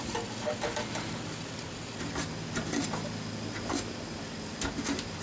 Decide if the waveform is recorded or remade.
recorded